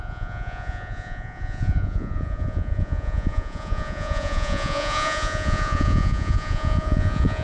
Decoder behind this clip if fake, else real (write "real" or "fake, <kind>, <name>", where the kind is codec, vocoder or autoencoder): fake, vocoder, Vocos